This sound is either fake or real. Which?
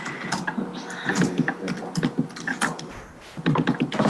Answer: real